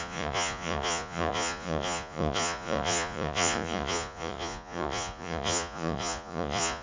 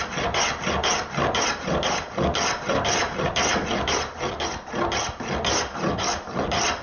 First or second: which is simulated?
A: first